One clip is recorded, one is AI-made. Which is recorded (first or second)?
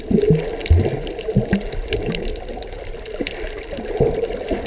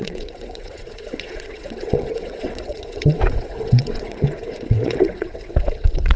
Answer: first